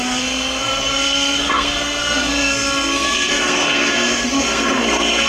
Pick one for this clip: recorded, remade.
remade